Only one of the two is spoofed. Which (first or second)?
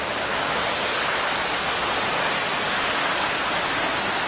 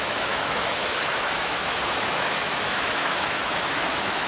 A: second